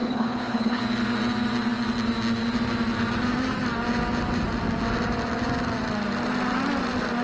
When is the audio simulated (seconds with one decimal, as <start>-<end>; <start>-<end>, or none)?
0.0-0.8